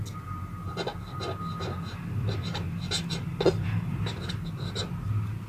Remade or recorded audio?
recorded